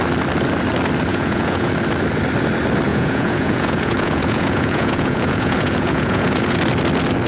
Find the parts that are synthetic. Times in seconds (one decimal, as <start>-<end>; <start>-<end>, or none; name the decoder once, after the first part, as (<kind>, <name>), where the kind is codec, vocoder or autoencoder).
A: 1.1-1.7 (vocoder, Vocos); 2.9-6.6